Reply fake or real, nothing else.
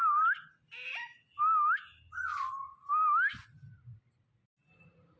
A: real